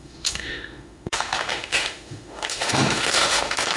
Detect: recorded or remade remade